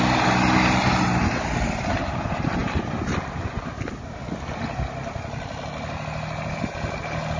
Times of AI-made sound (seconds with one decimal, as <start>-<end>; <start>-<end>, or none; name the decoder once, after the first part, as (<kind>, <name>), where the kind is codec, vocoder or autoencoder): none